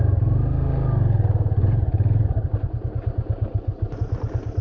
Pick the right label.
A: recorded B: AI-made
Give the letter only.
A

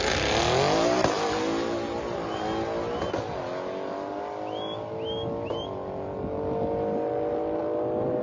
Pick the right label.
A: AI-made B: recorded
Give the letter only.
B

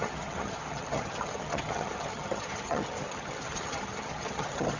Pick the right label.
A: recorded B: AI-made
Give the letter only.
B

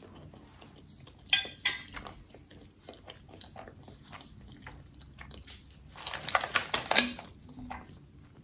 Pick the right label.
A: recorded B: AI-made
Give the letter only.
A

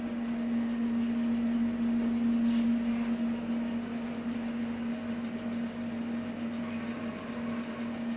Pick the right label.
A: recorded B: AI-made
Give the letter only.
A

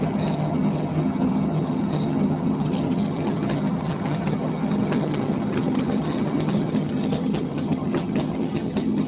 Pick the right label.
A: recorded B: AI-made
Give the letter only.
B